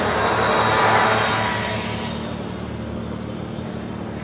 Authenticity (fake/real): real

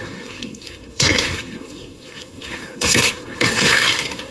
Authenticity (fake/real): fake